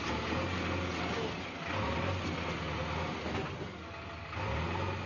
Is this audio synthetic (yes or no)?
no